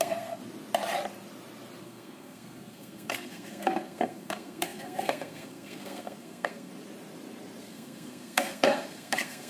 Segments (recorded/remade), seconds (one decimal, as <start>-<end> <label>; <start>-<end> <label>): 0.0-0.4 remade; 0.4-1.8 recorded; 1.8-6.7 remade; 6.7-7.6 recorded; 7.6-9.5 remade

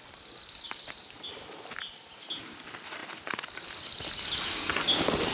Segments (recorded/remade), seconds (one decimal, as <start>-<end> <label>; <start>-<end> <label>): 0.0-5.3 recorded

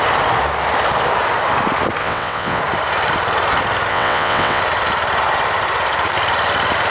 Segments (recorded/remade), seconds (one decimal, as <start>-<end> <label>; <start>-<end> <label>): 0.0-2.0 recorded; 2.0-2.6 remade; 2.6-3.9 recorded; 3.9-4.6 remade; 4.6-6.9 recorded

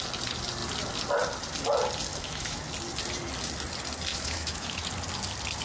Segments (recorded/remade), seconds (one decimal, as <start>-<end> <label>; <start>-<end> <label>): 0.0-2.1 recorded; 2.1-2.7 remade; 2.7-4.1 recorded; 4.1-4.9 remade; 4.9-5.6 recorded

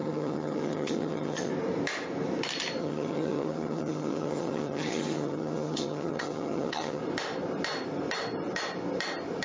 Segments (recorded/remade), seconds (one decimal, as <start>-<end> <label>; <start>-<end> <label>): 0.0-1.5 remade; 1.5-2.8 recorded; 2.8-7.0 remade; 7.0-9.4 recorded

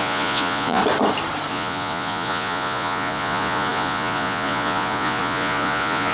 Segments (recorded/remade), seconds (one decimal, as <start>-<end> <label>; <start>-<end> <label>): 0.0-0.8 remade; 0.8-1.5 recorded; 1.5-6.1 remade

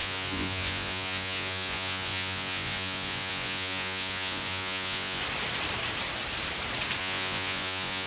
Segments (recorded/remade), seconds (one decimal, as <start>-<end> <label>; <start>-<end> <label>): 0.0-5.2 remade; 5.2-7.0 recorded; 7.0-8.1 remade

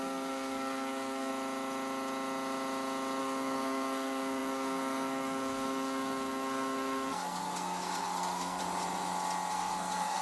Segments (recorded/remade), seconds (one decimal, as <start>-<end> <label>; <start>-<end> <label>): 0.0-1.3 remade; 1.3-3.2 recorded; 3.2-8.6 remade; 8.6-9.5 recorded; 9.5-10.2 remade